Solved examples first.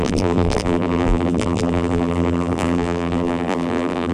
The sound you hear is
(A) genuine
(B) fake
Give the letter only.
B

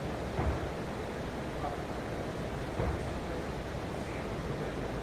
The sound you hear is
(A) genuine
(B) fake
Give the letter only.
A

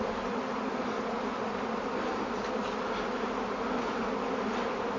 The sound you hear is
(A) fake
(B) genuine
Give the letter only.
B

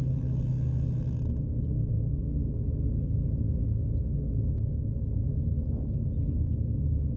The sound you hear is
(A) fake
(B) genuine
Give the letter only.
B